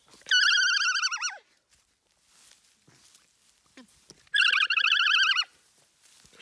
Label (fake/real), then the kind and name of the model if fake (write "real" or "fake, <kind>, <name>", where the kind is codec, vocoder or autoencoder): real